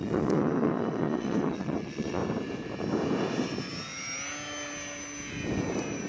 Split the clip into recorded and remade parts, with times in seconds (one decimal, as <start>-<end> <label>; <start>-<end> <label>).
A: 0.0-2.2 remade; 2.2-6.1 recorded

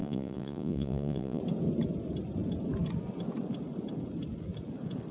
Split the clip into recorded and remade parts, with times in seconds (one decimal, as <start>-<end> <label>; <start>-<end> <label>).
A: 0.0-1.4 remade; 1.4-5.1 recorded

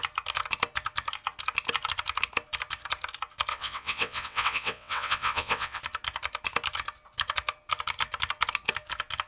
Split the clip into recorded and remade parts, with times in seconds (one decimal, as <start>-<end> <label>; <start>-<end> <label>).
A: 0.0-3.5 recorded; 3.5-5.8 remade; 5.8-9.3 recorded

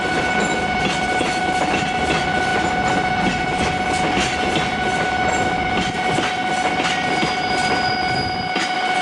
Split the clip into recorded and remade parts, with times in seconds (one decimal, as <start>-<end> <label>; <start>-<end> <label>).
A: 0.0-9.0 recorded